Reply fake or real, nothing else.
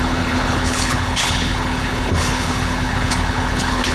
fake